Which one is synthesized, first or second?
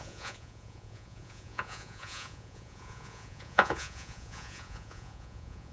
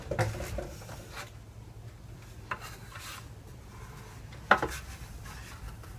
first